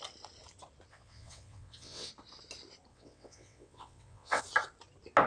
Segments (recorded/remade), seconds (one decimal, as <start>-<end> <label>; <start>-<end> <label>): 0.0-0.9 recorded; 0.9-2.1 remade; 2.1-2.9 recorded; 2.9-4.4 remade; 4.4-5.3 recorded